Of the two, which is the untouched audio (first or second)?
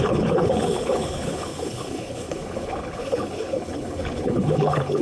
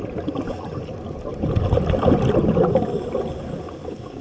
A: second